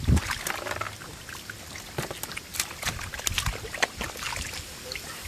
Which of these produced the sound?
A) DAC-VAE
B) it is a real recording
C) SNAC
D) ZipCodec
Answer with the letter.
B